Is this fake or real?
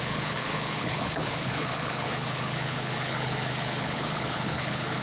fake